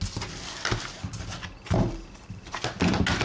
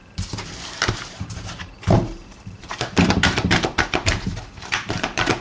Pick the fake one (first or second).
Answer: second